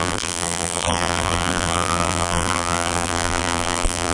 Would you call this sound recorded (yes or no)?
no